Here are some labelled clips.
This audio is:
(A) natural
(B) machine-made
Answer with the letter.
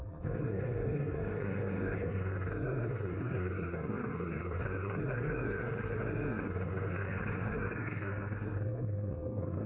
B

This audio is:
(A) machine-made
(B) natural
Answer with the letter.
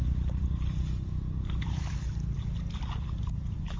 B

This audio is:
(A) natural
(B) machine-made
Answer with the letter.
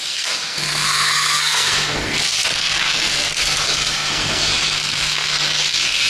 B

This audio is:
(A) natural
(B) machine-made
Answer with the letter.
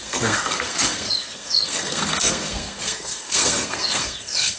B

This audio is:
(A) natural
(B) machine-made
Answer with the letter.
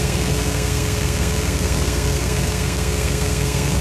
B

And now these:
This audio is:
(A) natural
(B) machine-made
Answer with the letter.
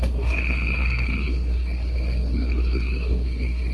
B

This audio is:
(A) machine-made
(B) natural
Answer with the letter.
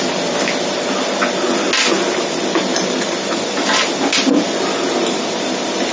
B